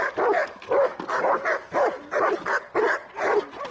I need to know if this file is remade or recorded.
recorded